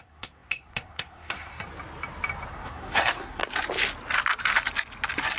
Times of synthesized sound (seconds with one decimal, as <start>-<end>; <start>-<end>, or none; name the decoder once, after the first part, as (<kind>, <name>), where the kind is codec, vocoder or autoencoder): 0.0-1.5 (codec, SNAC); 2.5-3.4